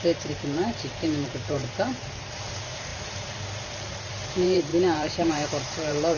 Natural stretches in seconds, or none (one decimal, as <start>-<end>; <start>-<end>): none